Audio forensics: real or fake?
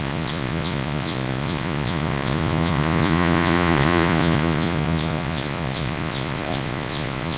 fake